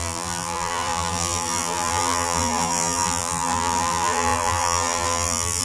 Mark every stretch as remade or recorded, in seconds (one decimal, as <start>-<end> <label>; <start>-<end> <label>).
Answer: 0.0-5.6 remade